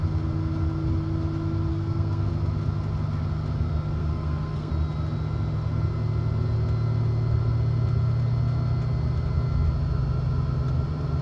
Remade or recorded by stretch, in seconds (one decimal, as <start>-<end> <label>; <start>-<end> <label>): 0.0-1.7 recorded; 1.7-2.3 remade; 2.3-4.0 recorded; 4.0-4.7 remade; 4.7-11.2 recorded